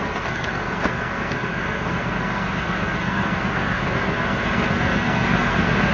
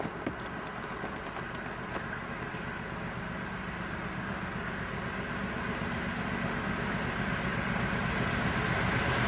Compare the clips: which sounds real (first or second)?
second